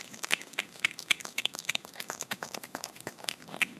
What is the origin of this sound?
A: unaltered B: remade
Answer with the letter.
B